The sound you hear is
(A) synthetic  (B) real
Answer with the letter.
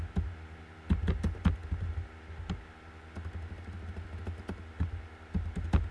B